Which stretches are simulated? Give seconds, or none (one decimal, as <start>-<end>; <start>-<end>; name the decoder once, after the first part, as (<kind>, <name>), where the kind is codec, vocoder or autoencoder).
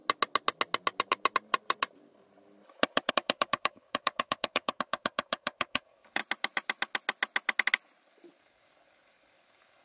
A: 3.1-6.2 (codec, DAC); 8.4-9.8